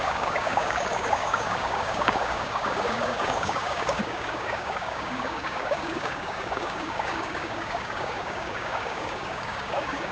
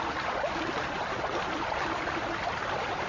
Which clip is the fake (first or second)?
first